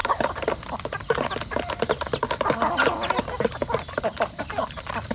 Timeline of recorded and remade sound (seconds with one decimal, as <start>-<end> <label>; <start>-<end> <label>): 0.0-5.1 recorded